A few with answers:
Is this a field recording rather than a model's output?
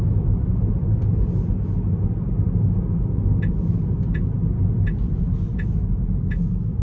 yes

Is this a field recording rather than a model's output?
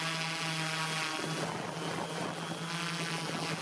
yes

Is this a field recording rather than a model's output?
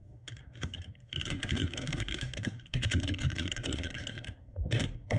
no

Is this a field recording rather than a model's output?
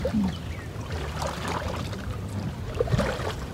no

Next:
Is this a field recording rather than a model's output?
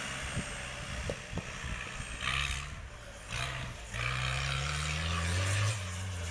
yes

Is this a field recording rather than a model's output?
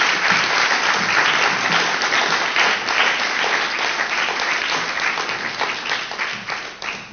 yes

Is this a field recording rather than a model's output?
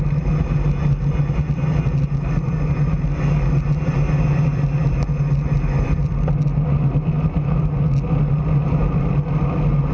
yes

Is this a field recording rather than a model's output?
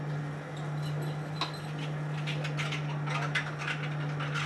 yes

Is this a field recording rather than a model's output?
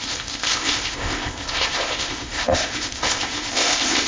no